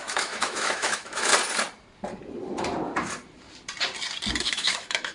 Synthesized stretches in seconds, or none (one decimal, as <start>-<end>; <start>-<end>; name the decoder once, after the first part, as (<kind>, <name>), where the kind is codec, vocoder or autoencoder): 0.0-1.3 (autoencoder, DAC-VAE); 4.4-5.1